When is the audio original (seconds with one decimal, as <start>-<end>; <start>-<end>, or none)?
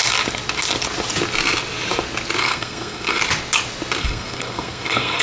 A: 0.0-2.4; 3.2-4.0